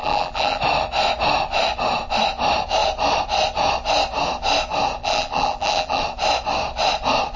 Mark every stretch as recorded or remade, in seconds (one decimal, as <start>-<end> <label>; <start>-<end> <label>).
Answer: 0.0-0.6 remade; 0.6-5.0 recorded; 5.0-6.0 remade; 6.0-7.4 recorded